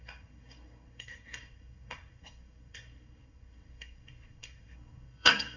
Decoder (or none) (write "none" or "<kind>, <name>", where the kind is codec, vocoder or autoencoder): codec, SNAC